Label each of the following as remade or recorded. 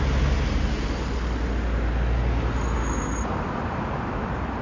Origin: recorded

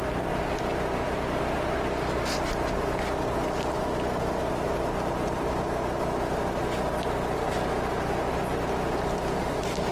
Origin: recorded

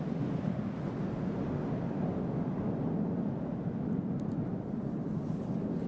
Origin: recorded